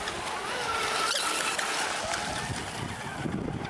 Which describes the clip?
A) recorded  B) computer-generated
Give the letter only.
A